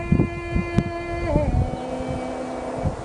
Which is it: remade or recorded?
recorded